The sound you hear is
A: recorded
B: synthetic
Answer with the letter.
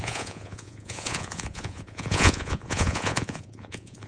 B